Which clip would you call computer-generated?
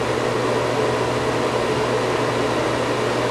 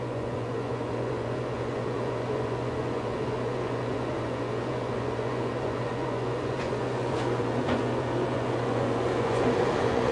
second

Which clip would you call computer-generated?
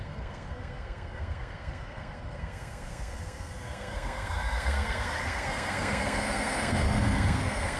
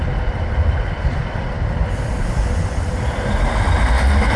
first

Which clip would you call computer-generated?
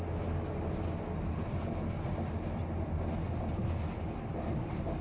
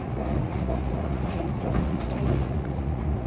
second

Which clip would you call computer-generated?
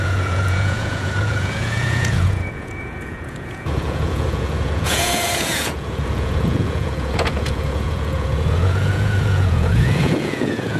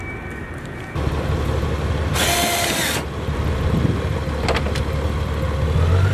first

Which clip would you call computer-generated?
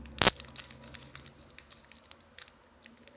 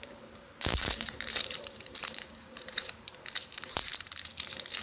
second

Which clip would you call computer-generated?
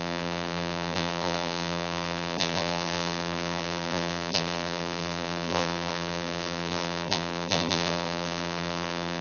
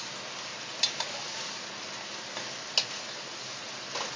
first